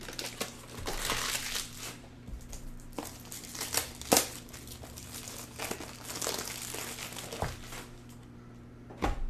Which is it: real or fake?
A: real